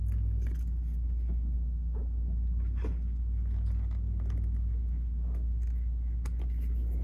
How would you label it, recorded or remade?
recorded